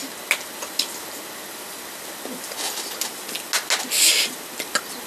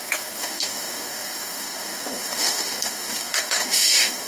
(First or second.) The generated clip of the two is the second